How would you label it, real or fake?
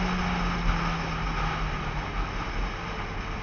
real